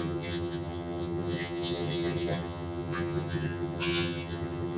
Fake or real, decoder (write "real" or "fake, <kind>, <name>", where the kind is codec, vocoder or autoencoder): fake, vocoder, HiFi-GAN